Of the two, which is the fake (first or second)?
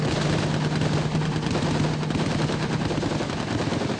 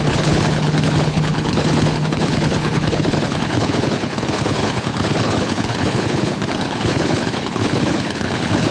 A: second